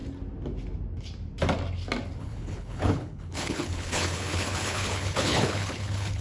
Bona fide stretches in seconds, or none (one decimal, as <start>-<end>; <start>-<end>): 0.0-2.2